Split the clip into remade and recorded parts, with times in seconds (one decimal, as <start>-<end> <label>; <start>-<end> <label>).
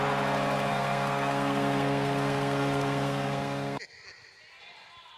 0.0-0.7 recorded; 0.7-3.8 remade; 3.8-5.2 recorded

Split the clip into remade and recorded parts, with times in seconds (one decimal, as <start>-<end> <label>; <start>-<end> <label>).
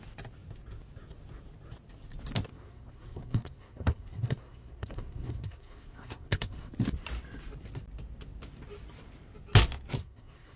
0.0-2.5 recorded; 2.5-6.7 remade; 6.7-10.0 recorded; 10.0-10.6 remade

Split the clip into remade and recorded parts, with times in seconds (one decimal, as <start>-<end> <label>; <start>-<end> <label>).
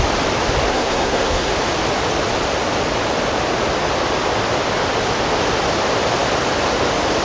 0.0-0.7 recorded; 0.7-1.5 remade; 1.5-7.2 recorded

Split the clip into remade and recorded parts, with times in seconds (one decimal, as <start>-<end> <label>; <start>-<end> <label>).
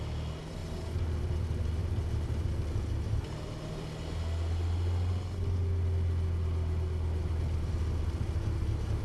0.0-9.0 recorded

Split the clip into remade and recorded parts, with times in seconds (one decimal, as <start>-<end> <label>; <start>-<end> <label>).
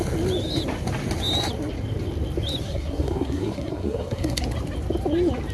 0.0-2.6 recorded; 2.6-4.4 remade; 4.4-5.5 recorded